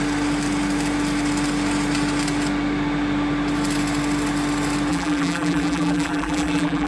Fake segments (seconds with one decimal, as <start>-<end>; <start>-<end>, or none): 4.9-6.9